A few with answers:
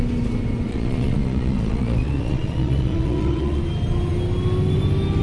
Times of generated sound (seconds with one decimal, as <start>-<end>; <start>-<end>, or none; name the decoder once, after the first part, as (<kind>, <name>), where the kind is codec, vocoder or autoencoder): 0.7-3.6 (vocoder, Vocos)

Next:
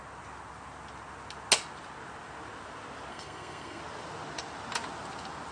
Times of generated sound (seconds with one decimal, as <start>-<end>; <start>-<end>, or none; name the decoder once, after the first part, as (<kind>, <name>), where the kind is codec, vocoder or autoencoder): 3.1-3.8 (codec, SNAC)

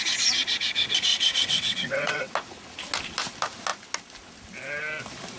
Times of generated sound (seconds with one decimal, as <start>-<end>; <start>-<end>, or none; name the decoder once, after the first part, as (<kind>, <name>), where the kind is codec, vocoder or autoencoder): 1.1-2.3 (vocoder, WaveNeXt)

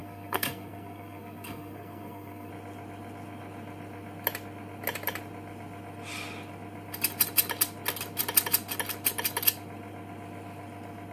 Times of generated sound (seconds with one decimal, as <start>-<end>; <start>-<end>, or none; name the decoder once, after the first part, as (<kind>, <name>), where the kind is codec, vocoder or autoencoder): 0.0-2.5 (codec, SNAC)

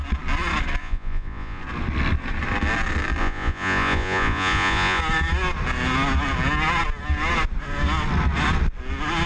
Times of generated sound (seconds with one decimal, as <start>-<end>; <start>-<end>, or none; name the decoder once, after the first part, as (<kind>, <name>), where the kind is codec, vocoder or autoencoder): 0.8-1.6 (vocoder, Vocos); 3.2-5.0

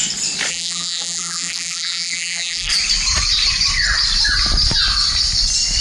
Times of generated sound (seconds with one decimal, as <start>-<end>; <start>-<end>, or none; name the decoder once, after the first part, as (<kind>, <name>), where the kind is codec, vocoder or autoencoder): 0.5-2.7 (vocoder, BigVGAN v2)

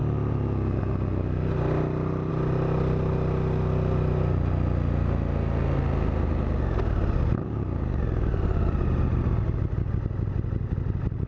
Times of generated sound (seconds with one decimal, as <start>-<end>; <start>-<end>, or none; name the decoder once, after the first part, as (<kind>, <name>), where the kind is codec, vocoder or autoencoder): none